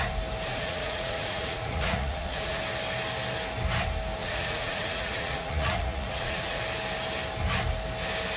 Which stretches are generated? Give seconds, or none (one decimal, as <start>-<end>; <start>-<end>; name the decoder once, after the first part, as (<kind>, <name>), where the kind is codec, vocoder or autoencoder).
0.5-2.6 (vocoder, Vocos); 4.2-6.6